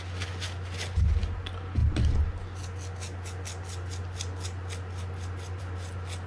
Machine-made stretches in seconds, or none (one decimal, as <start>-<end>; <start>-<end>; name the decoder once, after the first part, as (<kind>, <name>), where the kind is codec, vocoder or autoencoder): none

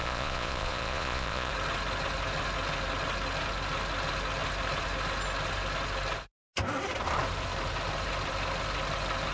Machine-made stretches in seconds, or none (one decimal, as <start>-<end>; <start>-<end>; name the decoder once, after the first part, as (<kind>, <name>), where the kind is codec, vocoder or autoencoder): 0.0-1.5 (vocoder, Vocos)

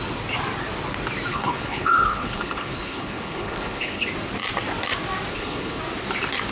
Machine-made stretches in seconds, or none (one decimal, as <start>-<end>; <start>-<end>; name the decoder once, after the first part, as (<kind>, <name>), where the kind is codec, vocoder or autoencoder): 1.3-4.1 (codec, HILCodec); 5.3-5.8

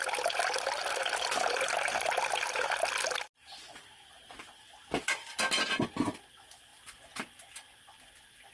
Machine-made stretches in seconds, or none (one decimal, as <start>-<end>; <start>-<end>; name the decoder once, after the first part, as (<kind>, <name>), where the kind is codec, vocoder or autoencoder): none

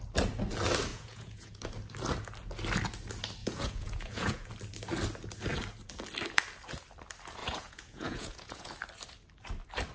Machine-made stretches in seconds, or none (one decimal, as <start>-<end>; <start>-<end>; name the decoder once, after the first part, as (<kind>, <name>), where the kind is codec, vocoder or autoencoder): 0.9-1.6 (vocoder, Vocos); 3.4-4.5; 7.4-8.7

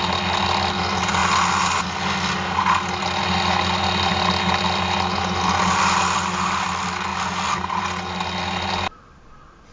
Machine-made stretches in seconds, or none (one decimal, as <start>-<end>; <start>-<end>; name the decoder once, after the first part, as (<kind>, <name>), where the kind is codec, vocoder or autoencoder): none